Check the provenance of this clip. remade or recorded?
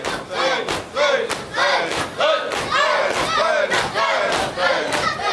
recorded